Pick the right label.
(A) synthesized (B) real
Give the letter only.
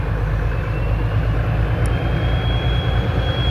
B